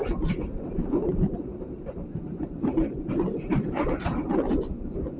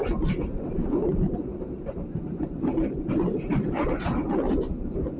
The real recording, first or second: second